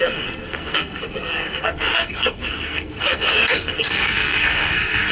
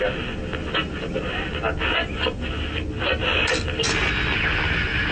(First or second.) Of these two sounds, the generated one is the first